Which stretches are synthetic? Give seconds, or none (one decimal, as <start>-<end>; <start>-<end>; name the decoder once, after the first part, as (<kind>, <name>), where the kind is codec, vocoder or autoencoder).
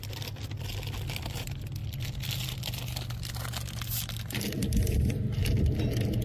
none